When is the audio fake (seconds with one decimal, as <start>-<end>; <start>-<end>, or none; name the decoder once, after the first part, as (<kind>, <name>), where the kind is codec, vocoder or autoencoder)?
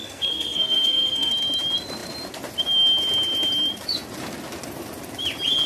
0.0-1.3 (codec, SNAC)